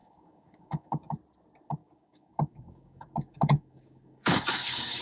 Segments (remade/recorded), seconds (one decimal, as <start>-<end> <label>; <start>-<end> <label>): 0.0-1.1 remade; 1.1-1.8 recorded; 1.8-5.0 remade